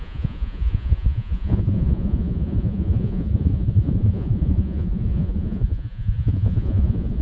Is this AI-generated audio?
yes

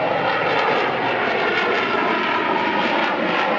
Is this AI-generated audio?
no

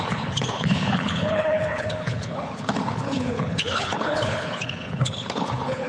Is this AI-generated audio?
yes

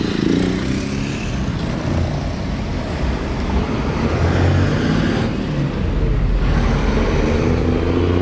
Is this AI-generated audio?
no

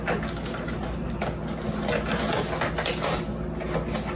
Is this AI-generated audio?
no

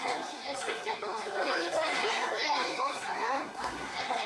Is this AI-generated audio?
yes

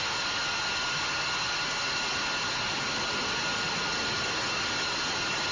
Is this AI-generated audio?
no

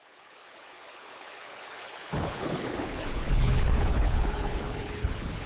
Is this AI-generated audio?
yes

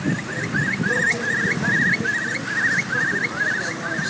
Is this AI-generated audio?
no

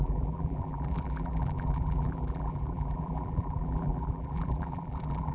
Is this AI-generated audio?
yes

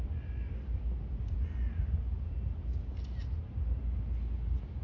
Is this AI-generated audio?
no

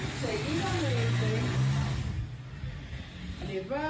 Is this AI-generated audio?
no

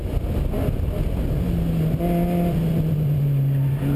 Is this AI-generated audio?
no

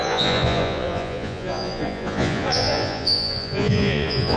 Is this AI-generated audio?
yes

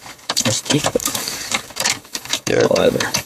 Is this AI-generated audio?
yes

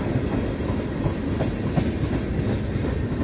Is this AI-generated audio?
no